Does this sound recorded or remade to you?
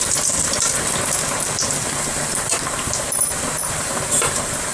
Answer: remade